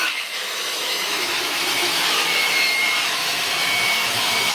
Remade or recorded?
remade